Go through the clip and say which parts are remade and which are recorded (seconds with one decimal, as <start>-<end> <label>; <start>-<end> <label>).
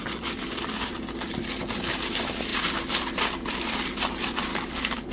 0.0-4.5 recorded; 4.5-5.1 remade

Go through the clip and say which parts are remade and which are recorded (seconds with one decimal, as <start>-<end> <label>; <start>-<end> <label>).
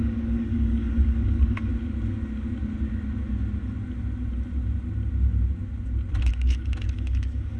0.0-1.7 remade; 1.7-6.3 recorded; 6.3-7.6 remade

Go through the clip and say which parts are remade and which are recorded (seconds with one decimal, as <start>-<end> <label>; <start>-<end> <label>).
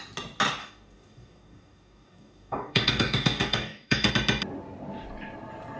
0.0-0.6 recorded; 0.6-4.1 remade; 4.1-5.8 recorded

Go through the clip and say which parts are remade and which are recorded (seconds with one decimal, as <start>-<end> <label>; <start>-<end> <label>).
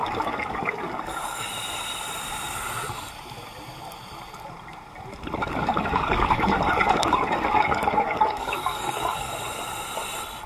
0.0-1.5 remade; 1.5-5.4 recorded; 5.4-9.3 remade; 9.3-10.5 recorded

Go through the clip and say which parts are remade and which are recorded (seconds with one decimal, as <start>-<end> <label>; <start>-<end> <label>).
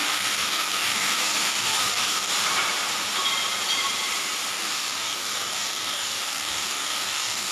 0.0-2.3 remade; 2.3-4.5 recorded; 4.5-7.5 remade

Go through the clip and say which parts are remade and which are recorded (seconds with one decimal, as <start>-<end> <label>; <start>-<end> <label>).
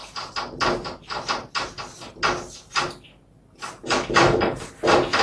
0.0-3.8 recorded; 3.8-4.7 remade; 4.7-5.2 recorded